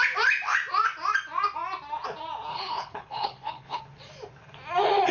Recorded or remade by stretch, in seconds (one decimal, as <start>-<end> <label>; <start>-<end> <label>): 0.0-2.5 recorded; 2.5-3.8 remade; 3.8-5.1 recorded